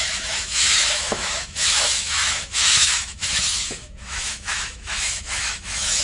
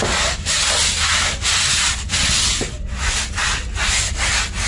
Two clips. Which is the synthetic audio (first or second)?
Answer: first